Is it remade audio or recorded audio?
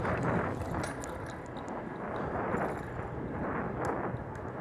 recorded